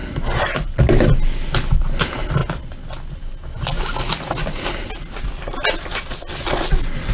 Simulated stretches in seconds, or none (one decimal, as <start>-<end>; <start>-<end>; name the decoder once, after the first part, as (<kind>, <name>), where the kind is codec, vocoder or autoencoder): none

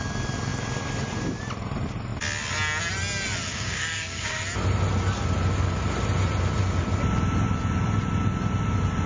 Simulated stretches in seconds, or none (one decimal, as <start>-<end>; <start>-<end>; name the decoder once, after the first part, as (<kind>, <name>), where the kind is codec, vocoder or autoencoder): 3.5-4.4 (codec, DAC)